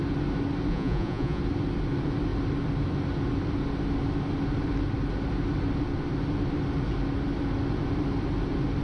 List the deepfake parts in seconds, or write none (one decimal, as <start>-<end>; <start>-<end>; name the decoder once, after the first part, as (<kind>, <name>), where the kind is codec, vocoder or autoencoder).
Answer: 0.7-1.4 (vocoder, Vocos)